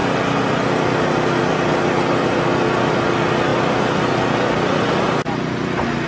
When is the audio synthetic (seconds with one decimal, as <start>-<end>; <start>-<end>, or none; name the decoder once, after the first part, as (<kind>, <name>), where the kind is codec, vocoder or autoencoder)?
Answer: none